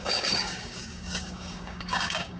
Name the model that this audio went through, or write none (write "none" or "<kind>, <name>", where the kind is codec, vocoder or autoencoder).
codec, DAC